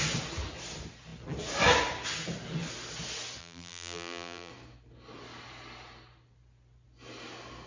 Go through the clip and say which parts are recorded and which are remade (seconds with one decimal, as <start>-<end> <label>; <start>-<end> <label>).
0.0-3.4 recorded; 3.4-4.5 remade; 4.5-7.7 recorded